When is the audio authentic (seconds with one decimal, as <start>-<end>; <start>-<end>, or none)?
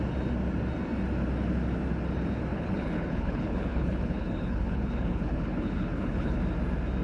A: 0.0-2.5; 6.4-7.0